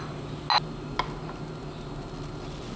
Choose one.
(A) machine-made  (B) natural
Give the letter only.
B